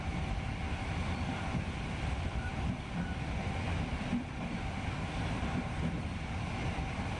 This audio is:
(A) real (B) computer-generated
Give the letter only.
B